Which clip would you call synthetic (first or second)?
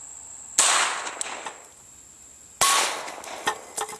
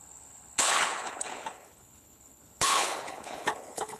second